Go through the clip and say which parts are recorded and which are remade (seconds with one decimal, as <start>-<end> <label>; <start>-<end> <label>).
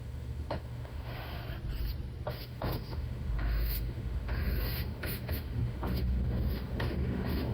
0.0-1.4 remade; 1.4-2.3 recorded; 2.3-7.5 remade